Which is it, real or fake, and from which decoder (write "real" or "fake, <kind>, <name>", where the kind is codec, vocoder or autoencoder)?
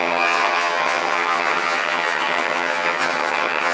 fake, vocoder, HiFi-GAN